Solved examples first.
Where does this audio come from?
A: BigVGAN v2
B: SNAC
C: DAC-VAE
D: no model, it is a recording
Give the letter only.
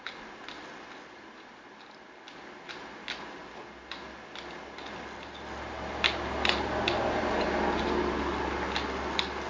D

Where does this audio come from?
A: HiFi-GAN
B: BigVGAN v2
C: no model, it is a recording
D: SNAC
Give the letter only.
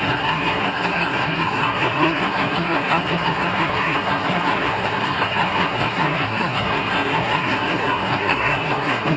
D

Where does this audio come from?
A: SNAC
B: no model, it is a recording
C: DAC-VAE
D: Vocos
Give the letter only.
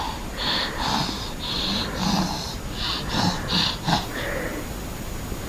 B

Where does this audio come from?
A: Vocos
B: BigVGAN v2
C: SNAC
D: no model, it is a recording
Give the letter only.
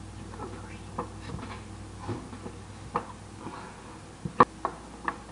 D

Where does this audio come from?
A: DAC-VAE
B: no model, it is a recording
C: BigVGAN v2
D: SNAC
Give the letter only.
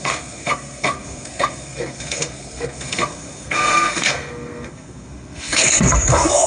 D